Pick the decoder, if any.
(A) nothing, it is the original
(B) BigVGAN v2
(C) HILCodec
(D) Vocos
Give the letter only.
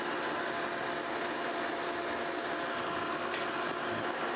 A